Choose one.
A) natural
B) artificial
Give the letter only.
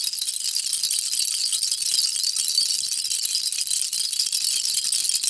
A